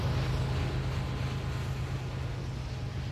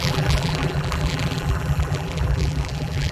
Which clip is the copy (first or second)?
second